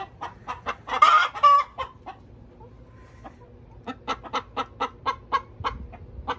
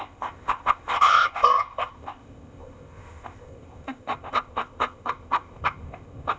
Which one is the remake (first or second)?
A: second